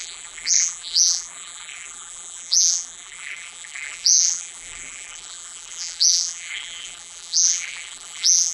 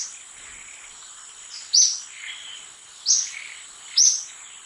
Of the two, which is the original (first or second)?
second